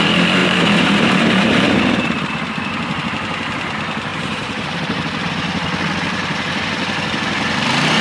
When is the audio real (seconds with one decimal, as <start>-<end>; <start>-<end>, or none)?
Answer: 0.0-0.4; 2.3-4.1; 5.0-8.0